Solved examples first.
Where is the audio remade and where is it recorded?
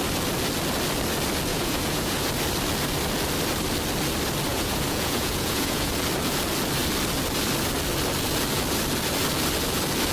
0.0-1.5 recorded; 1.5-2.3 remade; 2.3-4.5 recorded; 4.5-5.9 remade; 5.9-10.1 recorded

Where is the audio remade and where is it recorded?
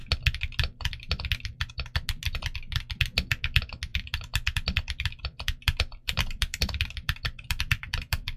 0.0-3.9 recorded; 3.9-8.4 remade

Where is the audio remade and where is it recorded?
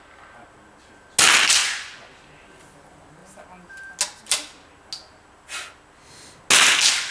0.0-1.6 recorded; 1.6-2.1 remade; 2.1-7.1 recorded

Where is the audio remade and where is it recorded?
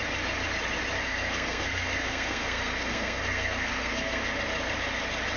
0.0-1.0 recorded; 1.0-4.2 remade; 4.2-5.4 recorded